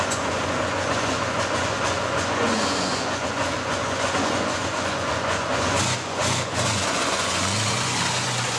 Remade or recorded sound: remade